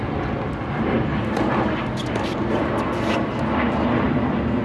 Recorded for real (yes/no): yes